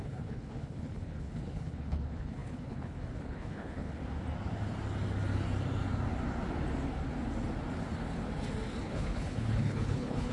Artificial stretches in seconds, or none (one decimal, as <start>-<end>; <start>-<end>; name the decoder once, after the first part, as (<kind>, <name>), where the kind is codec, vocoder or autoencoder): 0.0-4.0 (codec, HILCodec); 8.8-10.3